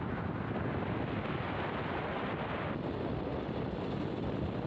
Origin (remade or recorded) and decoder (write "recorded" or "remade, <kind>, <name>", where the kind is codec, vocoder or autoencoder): recorded